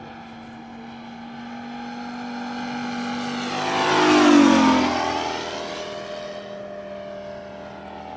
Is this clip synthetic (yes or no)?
no